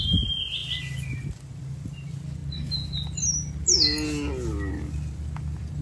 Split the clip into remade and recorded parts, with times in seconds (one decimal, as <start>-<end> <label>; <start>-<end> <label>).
0.0-5.8 recorded